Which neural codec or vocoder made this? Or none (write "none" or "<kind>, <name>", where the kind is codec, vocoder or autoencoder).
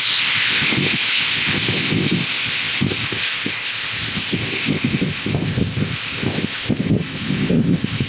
codec, ZipCodec